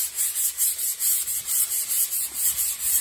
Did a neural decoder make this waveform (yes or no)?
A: yes